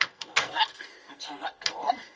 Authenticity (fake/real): fake